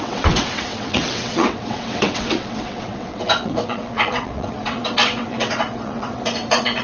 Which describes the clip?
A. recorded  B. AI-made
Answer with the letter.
B